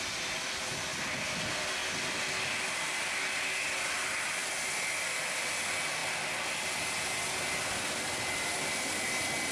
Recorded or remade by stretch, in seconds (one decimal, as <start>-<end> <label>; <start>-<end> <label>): 0.0-9.5 recorded

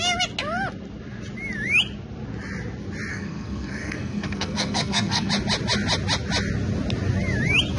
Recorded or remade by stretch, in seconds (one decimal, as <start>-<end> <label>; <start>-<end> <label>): 0.0-3.1 recorded; 3.1-5.3 remade; 5.3-7.8 recorded

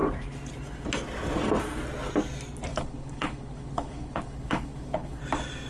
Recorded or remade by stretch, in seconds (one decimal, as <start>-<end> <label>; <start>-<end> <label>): 0.0-2.7 recorded; 2.7-5.2 remade; 5.2-5.7 recorded

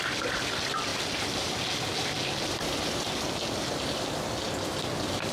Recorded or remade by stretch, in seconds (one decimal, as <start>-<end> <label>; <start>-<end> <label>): 0.0-5.3 recorded

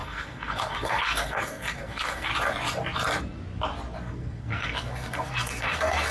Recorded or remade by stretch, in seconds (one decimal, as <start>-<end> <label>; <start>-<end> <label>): 0.0-2.3 remade; 2.3-4.0 recorded; 4.0-6.1 remade

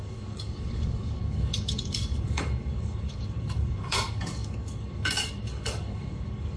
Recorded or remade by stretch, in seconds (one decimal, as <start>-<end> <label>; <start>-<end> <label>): 0.0-6.6 remade